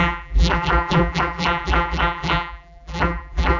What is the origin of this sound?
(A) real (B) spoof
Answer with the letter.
B